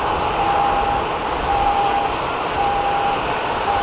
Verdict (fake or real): real